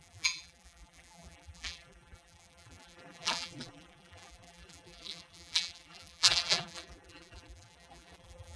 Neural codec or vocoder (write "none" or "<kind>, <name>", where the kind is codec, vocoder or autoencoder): vocoder, BigVGAN v2